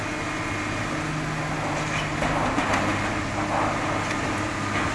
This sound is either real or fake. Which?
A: real